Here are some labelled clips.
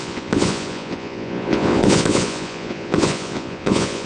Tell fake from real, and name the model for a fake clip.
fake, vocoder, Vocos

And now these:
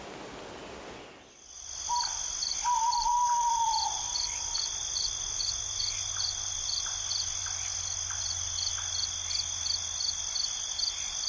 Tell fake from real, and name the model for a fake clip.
real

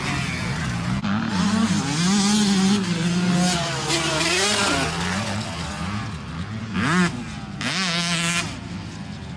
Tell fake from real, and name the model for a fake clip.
real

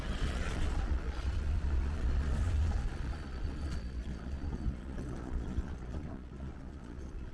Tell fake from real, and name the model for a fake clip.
fake, vocoder, Vocos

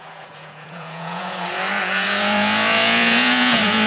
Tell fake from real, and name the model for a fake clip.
fake, vocoder, Vocos